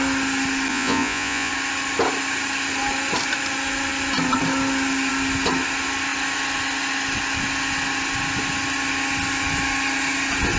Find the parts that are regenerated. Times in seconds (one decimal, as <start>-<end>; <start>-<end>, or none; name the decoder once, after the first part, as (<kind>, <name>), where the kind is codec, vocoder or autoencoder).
0.7-1.5 (vocoder, Vocos)